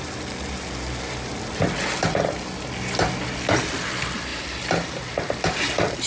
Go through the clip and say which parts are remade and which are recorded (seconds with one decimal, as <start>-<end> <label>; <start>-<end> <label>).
0.0-4.3 recorded; 4.3-5.0 remade; 5.0-6.1 recorded